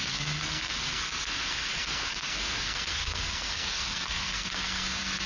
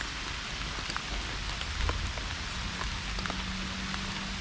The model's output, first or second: first